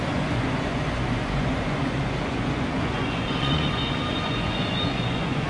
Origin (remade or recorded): remade